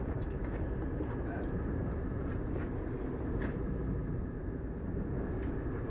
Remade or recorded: remade